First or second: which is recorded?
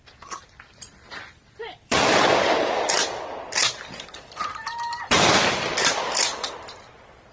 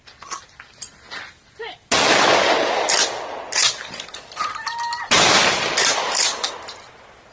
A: second